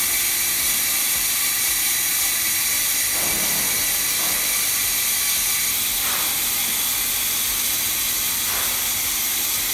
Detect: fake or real real